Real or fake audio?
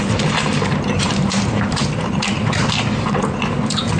fake